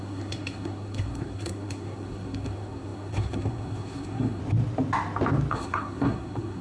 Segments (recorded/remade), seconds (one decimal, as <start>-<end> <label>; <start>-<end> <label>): 0.0-4.4 remade; 4.4-5.5 recorded; 5.5-6.6 remade